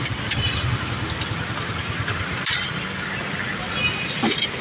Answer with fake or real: real